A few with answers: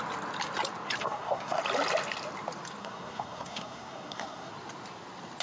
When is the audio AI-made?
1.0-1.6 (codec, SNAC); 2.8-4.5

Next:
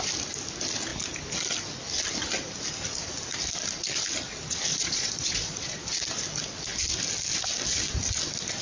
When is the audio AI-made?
4.7-5.8 (vocoder, Vocos)